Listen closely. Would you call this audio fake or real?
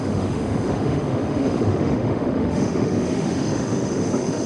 fake